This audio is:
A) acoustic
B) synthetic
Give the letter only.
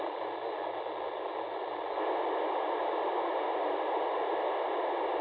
A